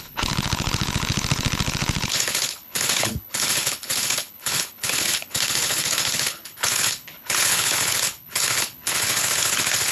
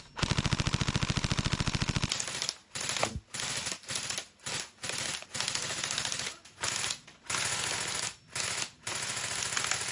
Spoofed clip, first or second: first